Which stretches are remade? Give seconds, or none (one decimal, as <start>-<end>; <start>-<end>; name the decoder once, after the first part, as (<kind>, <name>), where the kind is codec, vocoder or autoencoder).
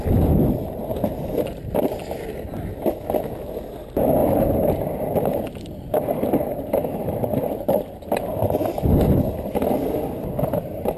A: none